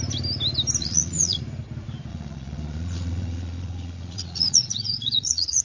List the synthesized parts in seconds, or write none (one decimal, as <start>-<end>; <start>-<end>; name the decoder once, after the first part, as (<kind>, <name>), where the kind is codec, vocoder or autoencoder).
0.8-1.4 (vocoder, Vocos); 2.1-5.6